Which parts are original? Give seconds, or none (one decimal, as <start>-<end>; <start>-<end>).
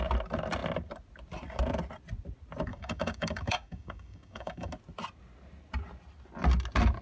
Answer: 0.0-2.7; 4.7-7.0